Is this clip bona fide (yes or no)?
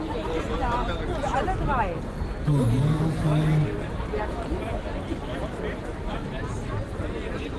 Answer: yes